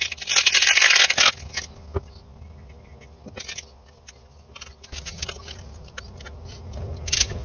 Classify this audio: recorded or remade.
recorded